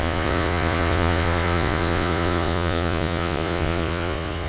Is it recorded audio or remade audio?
remade